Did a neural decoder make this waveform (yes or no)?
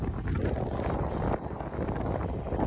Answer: no